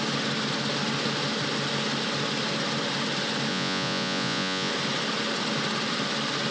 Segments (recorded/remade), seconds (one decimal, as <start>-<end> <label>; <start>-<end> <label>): 0.0-3.5 recorded; 3.5-4.7 remade; 4.7-6.5 recorded

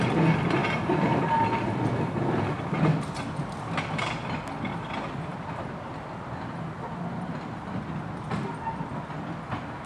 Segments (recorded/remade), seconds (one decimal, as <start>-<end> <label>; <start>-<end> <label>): 0.0-9.9 recorded

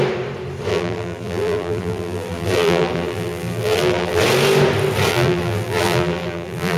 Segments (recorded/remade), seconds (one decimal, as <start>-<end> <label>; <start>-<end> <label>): 0.0-0.7 recorded; 0.7-4.2 remade; 4.2-5.1 recorded; 5.1-6.8 remade

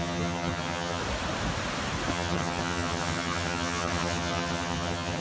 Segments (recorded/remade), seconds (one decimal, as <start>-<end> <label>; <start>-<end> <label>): 0.0-1.0 remade; 1.0-2.1 recorded; 2.1-5.2 remade